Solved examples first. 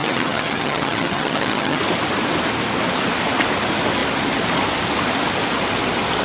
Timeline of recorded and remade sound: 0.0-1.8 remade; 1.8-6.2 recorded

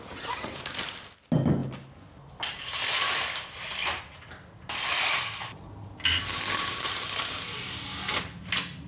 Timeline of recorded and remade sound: 0.0-8.9 recorded

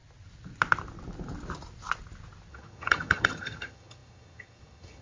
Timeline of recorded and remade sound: 0.0-2.5 recorded; 2.5-5.0 remade

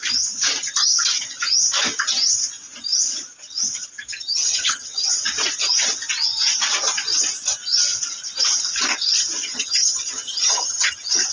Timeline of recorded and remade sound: 0.0-4.1 recorded; 4.1-5.1 remade; 5.1-9.4 recorded; 9.4-10.9 remade; 10.9-11.3 recorded

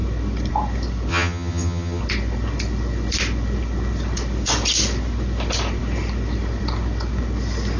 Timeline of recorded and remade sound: 0.0-1.1 recorded; 1.1-2.0 remade; 2.0-7.8 recorded